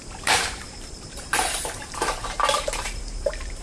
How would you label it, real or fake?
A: fake